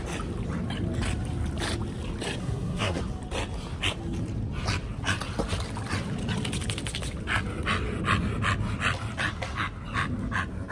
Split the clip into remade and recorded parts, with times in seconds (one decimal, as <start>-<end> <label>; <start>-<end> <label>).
0.0-2.4 recorded; 2.4-3.0 remade; 3.0-10.7 recorded